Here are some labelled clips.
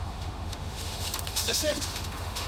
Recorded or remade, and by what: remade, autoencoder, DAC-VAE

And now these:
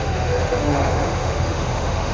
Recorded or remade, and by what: remade, autoencoder, DAC-VAE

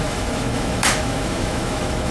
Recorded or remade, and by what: remade, autoencoder, DAC-VAE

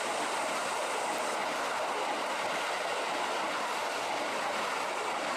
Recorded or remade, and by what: recorded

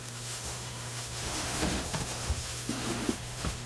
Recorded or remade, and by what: remade, autoencoder, DAC-VAE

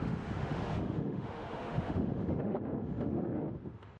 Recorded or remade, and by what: remade, autoencoder, DAC-VAE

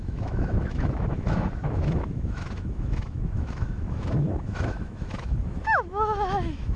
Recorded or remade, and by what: remade, autoencoder, DAC-VAE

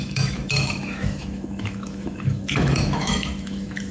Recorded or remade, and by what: remade, autoencoder, DAC-VAE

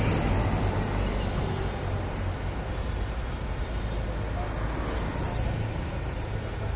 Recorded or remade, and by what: recorded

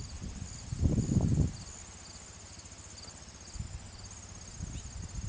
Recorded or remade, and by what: recorded